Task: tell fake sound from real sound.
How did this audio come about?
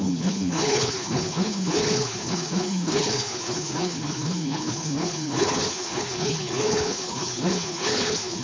fake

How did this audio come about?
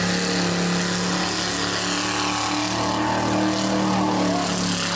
real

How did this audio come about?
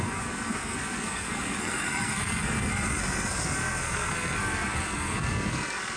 fake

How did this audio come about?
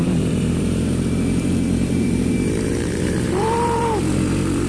fake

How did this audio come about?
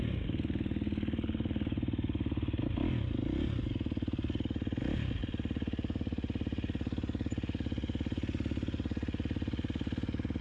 real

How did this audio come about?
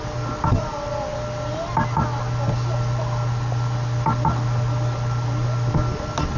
real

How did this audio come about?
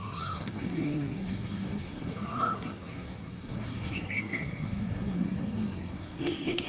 fake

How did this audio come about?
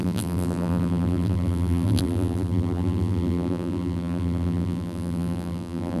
fake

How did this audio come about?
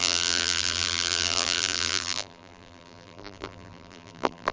fake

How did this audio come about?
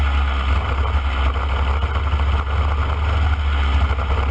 real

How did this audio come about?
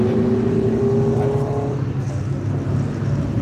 real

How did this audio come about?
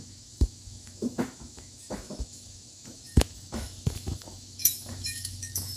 fake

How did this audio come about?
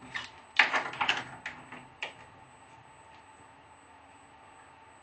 real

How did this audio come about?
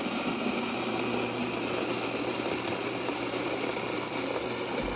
real